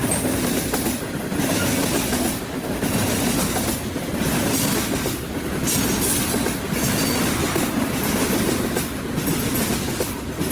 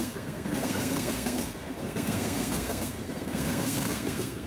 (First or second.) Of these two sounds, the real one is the first